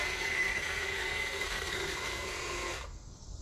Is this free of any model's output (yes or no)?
no